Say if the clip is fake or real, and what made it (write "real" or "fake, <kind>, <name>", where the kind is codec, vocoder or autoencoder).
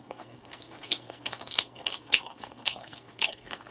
fake, codec, SNAC